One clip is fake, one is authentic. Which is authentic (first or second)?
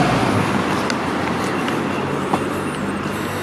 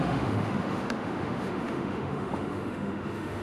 first